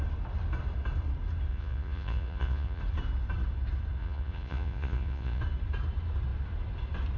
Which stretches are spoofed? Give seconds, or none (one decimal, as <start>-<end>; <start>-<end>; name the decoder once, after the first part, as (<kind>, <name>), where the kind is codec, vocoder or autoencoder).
1.5-2.8 (vocoder, Vocos); 4.0-5.4